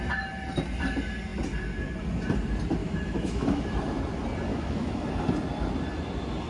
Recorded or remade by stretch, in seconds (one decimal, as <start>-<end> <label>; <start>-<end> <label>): 0.0-2.8 recorded; 2.8-3.6 remade; 3.6-4.5 recorded; 4.5-5.0 remade; 5.0-6.5 recorded